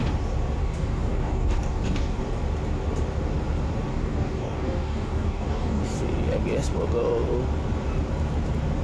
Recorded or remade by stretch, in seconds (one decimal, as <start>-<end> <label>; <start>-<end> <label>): 0.0-0.6 recorded; 0.6-2.2 remade; 2.2-3.9 recorded; 3.9-5.8 remade; 5.8-8.8 recorded

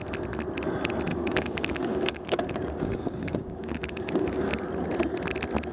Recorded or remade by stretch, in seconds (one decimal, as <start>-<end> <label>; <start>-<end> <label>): 0.0-1.1 recorded; 1.1-4.5 remade; 4.5-5.7 recorded

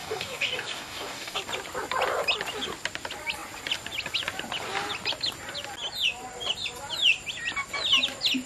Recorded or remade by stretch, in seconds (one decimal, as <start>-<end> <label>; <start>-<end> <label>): 0.0-1.4 remade; 1.4-8.5 recorded